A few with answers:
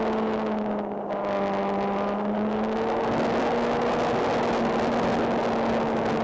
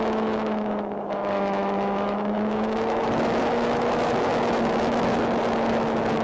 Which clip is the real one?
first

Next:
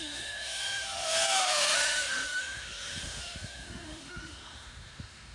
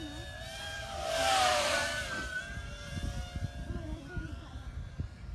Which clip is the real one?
second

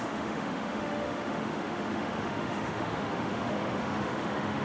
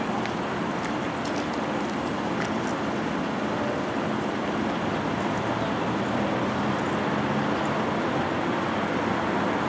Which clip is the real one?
second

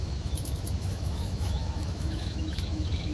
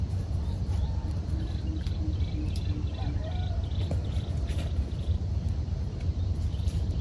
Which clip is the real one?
second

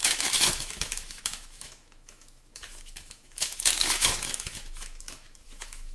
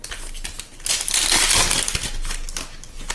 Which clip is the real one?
second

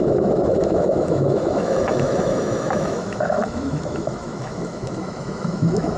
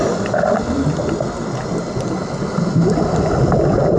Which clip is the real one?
second